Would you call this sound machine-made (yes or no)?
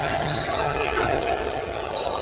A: yes